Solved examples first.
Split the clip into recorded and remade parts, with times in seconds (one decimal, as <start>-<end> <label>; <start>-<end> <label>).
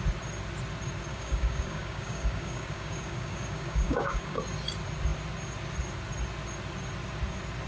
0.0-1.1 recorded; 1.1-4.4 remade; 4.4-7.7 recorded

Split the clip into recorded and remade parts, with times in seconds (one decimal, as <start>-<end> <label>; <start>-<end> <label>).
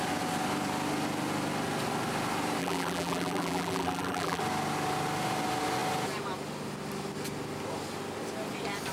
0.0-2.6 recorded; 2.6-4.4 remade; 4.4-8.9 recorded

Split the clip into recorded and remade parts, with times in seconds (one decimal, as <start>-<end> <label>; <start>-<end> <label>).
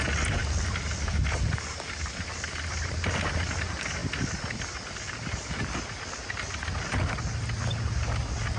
0.0-8.6 recorded